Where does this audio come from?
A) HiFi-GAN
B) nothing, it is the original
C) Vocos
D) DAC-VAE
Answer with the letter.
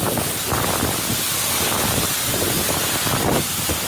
B